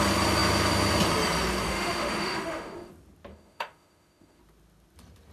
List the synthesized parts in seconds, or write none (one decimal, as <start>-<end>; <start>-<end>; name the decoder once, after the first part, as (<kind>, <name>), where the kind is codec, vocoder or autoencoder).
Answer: 1.7-2.9 (autoencoder, DAC-VAE); 3.3-4.4